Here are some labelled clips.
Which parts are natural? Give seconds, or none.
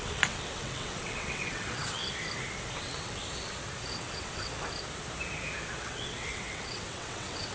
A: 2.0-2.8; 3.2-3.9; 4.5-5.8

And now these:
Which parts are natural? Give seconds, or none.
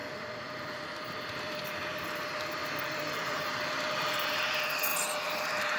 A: 0.7-2.6; 3.7-5.8